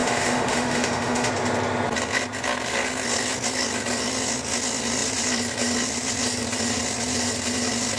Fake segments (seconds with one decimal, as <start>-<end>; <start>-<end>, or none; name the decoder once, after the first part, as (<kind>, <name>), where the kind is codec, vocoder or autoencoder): 0.0-1.3 (autoencoder, DAC-VAE)